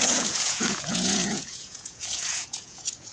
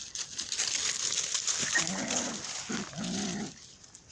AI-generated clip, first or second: first